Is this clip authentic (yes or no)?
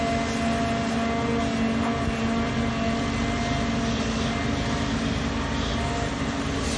yes